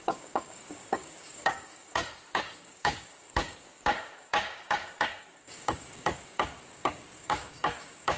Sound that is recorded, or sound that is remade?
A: remade